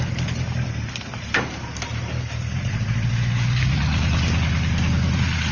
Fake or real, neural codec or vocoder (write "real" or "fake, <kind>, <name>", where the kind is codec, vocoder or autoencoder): real